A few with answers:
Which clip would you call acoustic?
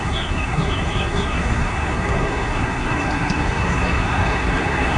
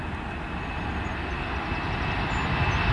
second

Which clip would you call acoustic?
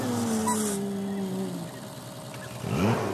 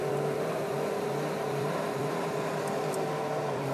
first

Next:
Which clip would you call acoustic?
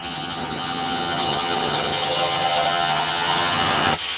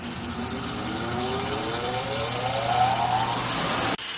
second